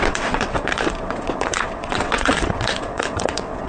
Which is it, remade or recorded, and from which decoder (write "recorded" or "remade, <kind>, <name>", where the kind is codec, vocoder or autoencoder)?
remade, vocoder, WaveNeXt